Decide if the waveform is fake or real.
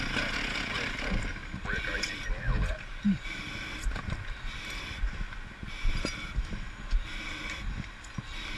real